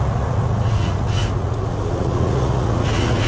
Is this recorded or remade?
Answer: remade